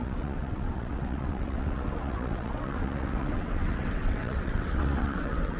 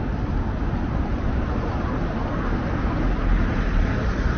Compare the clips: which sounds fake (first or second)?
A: first